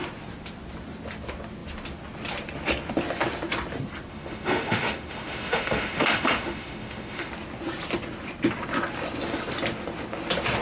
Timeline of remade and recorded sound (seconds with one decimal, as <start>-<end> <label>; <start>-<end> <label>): 0.0-4.1 recorded; 4.1-7.3 remade; 7.3-10.6 recorded